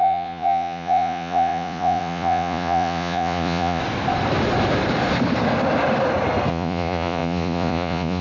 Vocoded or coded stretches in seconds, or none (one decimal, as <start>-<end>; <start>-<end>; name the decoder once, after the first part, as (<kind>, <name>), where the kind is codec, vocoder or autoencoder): 0.0-3.8 (vocoder, Vocos); 6.5-8.2